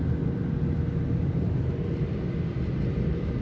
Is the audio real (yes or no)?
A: yes